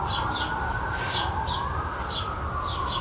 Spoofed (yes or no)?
no